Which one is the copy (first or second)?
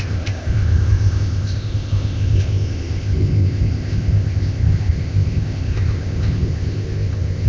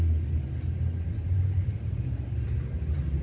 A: first